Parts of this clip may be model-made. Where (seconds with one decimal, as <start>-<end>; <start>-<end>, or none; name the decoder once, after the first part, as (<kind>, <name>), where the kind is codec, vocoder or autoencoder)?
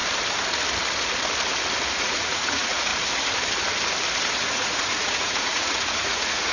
1.9-2.9 (vocoder, Vocos); 4.3-6.5